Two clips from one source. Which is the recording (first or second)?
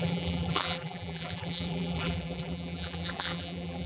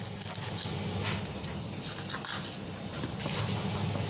second